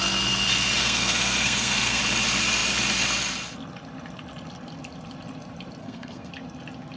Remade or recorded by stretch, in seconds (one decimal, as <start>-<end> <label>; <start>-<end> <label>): 0.0-0.8 recorded; 0.8-2.0 remade; 2.0-5.8 recorded; 5.8-6.3 remade; 6.3-7.0 recorded